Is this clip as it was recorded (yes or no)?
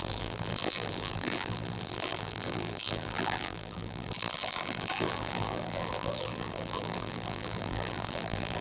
no